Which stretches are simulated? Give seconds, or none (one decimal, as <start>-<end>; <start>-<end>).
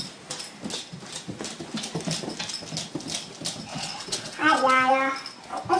3.7-4.9